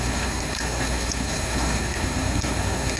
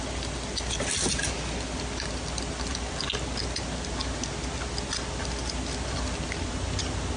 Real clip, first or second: second